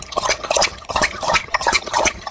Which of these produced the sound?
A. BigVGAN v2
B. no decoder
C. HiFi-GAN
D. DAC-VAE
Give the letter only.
C